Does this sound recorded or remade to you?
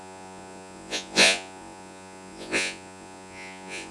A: remade